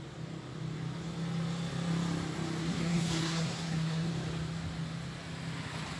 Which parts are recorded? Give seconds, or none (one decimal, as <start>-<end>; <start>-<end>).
0.0-2.6; 4.1-6.0